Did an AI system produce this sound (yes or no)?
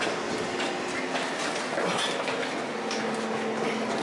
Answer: no